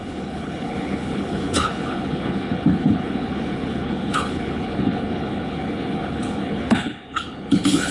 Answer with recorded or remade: remade